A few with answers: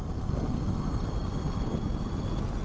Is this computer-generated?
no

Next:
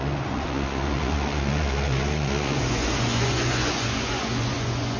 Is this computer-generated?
yes